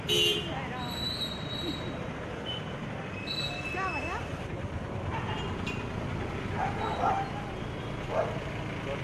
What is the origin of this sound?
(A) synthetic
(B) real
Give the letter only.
B